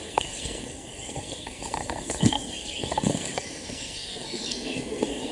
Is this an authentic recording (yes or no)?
no